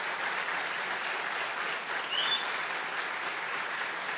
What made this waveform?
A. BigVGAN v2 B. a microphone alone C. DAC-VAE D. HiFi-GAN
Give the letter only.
B